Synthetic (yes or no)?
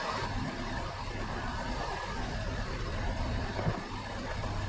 no